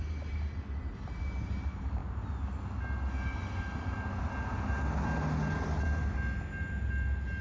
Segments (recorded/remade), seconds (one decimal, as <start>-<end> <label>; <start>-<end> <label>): 0.0-7.4 recorded